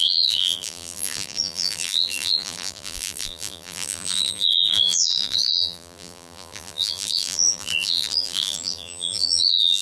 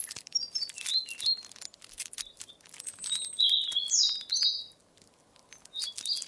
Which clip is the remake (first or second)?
first